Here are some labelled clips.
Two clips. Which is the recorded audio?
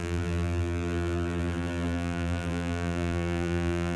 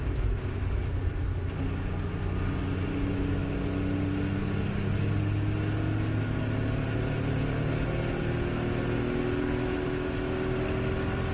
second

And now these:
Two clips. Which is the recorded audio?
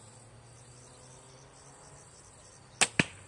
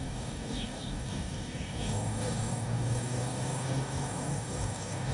first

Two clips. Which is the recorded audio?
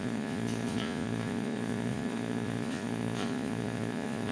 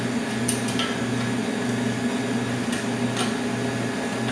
second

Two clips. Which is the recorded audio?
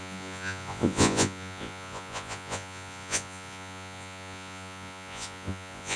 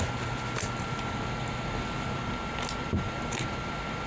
second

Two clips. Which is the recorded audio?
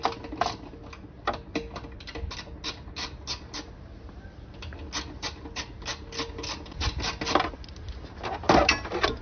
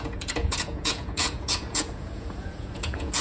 first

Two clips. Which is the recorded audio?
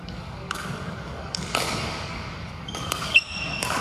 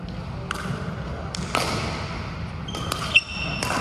second